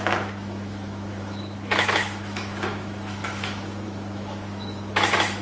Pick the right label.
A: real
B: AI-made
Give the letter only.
B